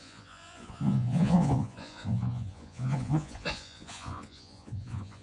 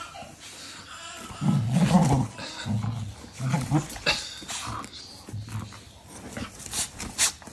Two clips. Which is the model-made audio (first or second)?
first